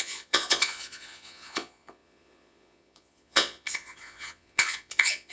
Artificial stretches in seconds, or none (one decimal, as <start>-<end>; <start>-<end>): 0.0-5.3